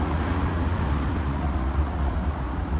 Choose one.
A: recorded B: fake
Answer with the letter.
B